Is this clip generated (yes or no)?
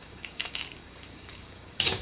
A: yes